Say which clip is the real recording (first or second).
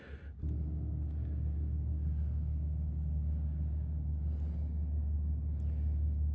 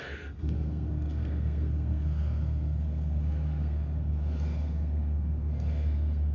first